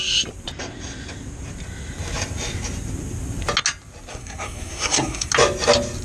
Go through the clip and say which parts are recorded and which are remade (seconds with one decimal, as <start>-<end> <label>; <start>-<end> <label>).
0.0-4.1 recorded; 4.1-5.3 remade; 5.3-6.0 recorded